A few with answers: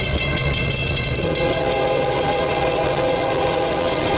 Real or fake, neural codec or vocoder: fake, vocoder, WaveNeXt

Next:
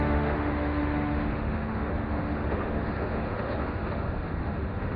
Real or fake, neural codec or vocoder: fake, autoencoder, DAC-VAE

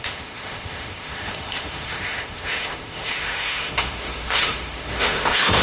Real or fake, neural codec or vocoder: fake, autoencoder, DAC-VAE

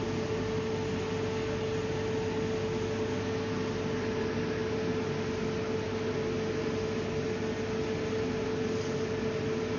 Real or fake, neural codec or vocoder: real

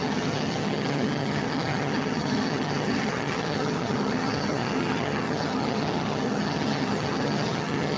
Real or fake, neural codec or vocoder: fake, vocoder, HiFi-GAN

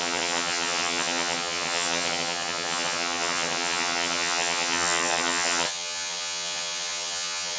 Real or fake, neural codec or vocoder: fake, vocoder, HiFi-GAN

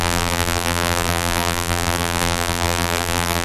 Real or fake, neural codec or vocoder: fake, vocoder, BigVGAN v2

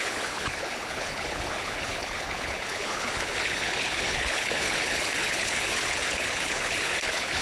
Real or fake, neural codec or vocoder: fake, codec, HILCodec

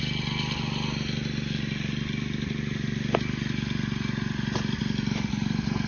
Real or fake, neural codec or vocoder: real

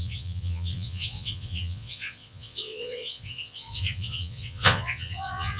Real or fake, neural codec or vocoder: fake, vocoder, Vocos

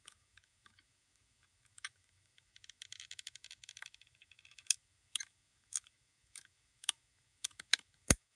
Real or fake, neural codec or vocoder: fake, autoencoder, DAC-VAE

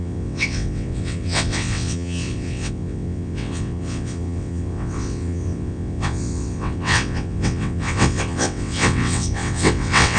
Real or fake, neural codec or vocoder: fake, vocoder, WaveNeXt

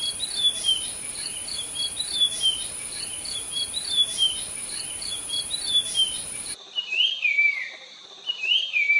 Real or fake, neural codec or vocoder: fake, vocoder, BigVGAN v2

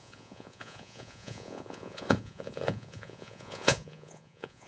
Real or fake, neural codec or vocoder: fake, vocoder, Vocos